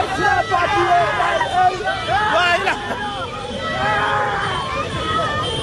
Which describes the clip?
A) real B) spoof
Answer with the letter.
B